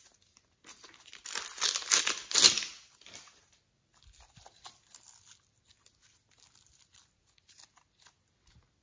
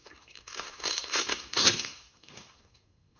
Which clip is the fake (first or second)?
second